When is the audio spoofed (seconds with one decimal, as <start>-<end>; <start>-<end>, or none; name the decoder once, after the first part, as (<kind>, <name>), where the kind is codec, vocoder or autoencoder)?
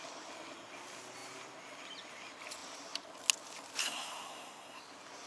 3.8-4.8 (codec, SNAC)